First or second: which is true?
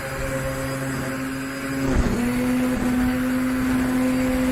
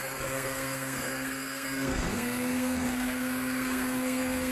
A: first